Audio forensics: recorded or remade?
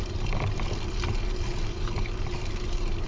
recorded